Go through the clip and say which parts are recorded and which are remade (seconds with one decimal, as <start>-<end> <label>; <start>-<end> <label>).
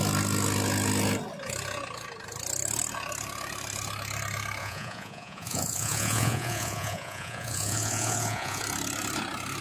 0.0-4.6 recorded; 4.6-8.6 remade; 8.6-9.6 recorded